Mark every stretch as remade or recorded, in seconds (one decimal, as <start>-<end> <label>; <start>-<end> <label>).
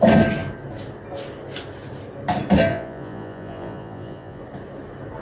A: 0.0-2.7 recorded; 2.7-4.4 remade; 4.4-5.2 recorded